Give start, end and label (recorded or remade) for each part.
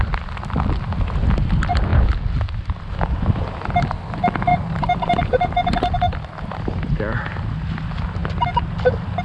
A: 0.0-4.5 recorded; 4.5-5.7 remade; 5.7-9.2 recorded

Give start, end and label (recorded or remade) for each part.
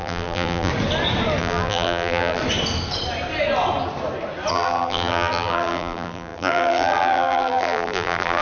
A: 0.0-0.7 remade; 0.7-1.4 recorded; 1.4-2.4 remade; 2.4-4.5 recorded; 4.5-8.4 remade